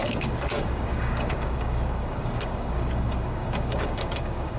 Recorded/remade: remade